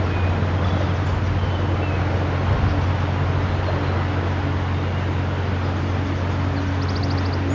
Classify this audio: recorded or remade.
recorded